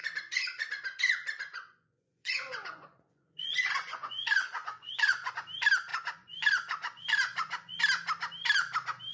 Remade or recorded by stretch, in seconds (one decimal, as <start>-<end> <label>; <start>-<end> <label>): 0.0-5.3 remade; 5.3-5.9 recorded; 5.9-7.8 remade; 7.8-9.1 recorded